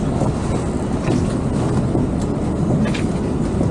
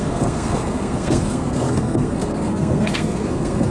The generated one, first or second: second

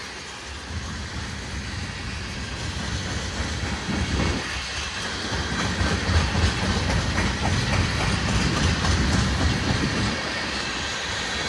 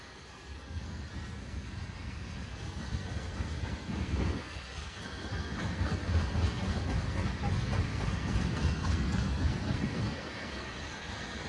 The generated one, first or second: second